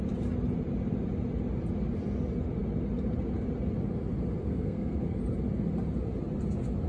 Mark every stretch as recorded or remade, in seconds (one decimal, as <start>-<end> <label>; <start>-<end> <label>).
0.0-4.4 recorded; 4.4-5.2 remade; 5.2-6.9 recorded